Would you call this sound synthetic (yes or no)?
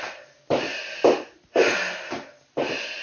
no